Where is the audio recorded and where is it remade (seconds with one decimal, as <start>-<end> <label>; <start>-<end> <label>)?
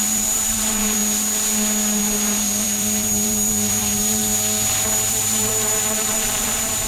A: 0.0-1.0 remade; 1.0-2.0 recorded; 2.0-4.2 remade; 4.2-5.1 recorded; 5.1-6.9 remade